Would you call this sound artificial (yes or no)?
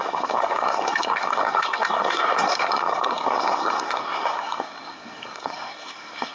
yes